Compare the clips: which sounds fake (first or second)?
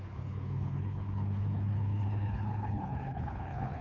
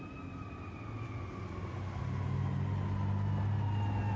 first